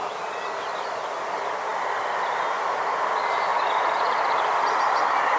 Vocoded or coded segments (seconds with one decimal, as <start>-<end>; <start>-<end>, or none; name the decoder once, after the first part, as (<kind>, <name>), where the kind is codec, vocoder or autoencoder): none